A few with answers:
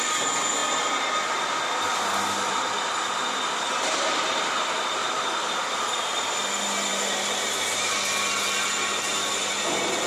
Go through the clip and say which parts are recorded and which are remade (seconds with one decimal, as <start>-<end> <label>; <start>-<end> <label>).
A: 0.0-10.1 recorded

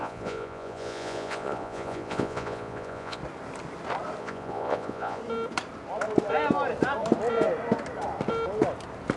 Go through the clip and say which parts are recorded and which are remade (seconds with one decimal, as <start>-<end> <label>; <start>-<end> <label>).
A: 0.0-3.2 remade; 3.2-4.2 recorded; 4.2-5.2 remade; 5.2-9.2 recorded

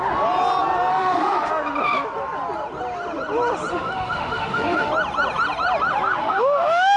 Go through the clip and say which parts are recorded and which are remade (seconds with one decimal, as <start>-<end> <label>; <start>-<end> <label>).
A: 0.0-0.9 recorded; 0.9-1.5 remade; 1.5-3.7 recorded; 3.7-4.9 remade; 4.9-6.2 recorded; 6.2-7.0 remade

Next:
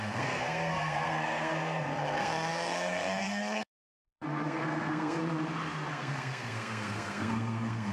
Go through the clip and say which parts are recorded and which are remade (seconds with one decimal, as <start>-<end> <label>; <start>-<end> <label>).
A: 0.0-5.2 remade; 5.2-5.9 recorded; 5.9-7.9 remade